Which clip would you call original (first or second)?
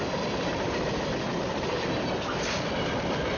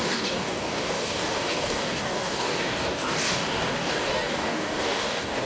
first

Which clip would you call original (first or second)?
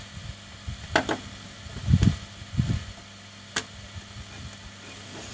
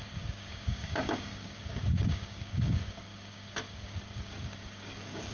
first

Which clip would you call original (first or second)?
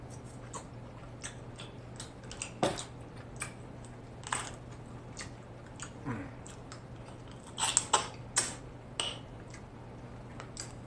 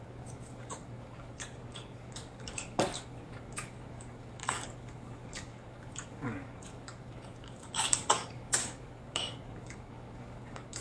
first